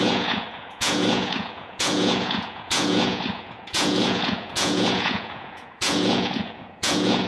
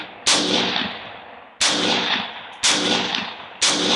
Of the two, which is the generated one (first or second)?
first